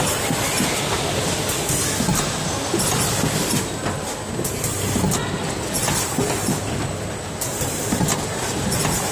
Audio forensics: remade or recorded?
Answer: recorded